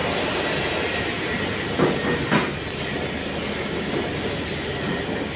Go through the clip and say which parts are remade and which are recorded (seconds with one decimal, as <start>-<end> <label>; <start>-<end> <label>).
0.0-3.2 recorded; 3.2-3.9 remade; 3.9-5.4 recorded